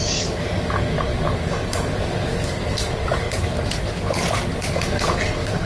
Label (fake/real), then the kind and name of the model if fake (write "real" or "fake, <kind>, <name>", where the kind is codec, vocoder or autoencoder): fake, codec, DAC